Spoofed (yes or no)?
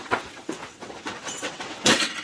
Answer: yes